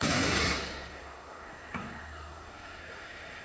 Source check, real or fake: fake